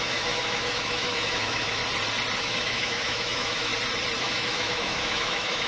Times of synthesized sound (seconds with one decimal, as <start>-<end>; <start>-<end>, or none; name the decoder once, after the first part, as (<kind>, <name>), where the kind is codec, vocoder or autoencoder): 0.0-1.8 (autoencoder, DAC-VAE); 2.4-3.7; 4.2-5.7